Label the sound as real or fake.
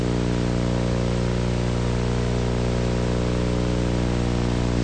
real